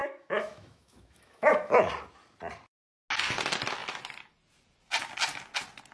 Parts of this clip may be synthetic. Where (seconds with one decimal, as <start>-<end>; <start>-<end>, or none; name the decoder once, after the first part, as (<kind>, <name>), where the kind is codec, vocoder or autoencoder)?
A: 0.0-1.9 (autoencoder, DAC-VAE)